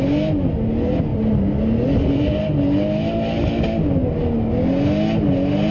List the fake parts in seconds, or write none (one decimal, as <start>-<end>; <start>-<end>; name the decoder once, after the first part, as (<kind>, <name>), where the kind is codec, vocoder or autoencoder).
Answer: none